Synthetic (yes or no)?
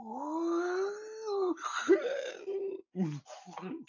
no